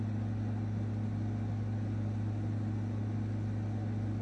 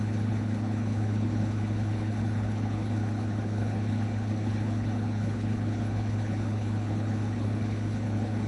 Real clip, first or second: first